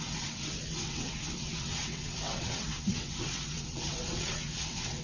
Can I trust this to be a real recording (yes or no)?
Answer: no